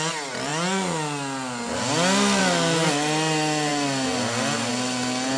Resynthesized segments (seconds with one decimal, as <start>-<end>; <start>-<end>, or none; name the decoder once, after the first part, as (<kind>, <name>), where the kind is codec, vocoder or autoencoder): none